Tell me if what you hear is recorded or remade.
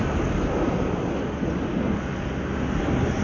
recorded